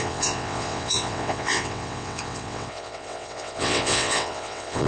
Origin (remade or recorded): remade